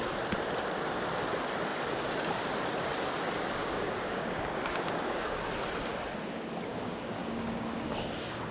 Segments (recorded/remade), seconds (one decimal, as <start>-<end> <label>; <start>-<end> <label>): 0.0-3.6 recorded; 3.6-5.5 remade; 5.5-6.7 recorded; 6.7-7.9 remade; 7.9-8.5 recorded